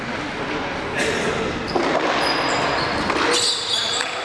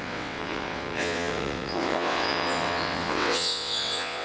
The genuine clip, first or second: first